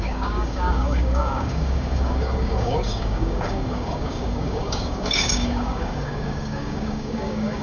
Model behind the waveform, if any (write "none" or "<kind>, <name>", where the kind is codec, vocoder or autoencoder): codec, DAC